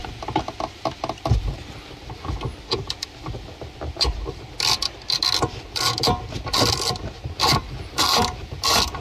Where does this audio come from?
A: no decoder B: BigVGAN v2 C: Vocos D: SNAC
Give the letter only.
A